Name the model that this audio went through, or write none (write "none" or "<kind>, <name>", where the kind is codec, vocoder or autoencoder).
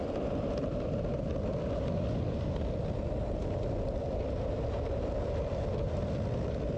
none